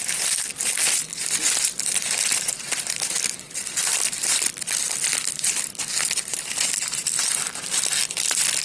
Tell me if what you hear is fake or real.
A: fake